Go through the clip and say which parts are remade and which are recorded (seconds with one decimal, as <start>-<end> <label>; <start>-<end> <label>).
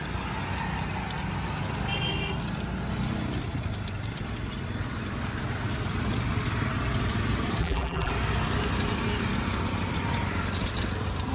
0.0-7.6 recorded; 7.6-8.1 remade; 8.1-11.3 recorded